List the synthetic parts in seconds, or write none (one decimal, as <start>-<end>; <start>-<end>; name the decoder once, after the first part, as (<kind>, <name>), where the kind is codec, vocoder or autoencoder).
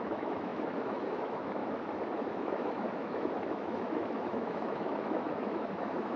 0.0-1.6 (autoencoder, DAC-VAE); 2.3-6.2